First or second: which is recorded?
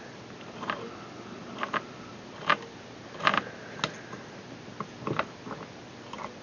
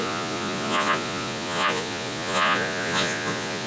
first